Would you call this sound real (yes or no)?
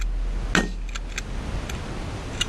yes